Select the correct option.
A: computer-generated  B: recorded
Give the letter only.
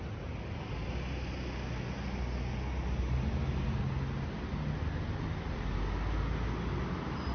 B